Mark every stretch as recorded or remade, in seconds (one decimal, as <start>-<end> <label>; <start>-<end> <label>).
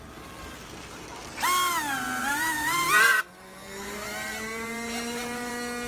0.0-2.2 recorded; 2.2-5.5 remade; 5.5-5.9 recorded